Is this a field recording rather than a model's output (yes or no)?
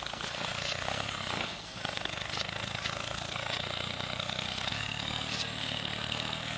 no